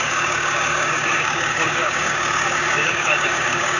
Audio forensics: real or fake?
fake